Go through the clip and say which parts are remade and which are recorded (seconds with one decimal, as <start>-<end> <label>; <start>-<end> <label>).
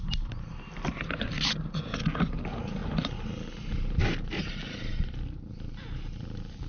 0.0-6.7 recorded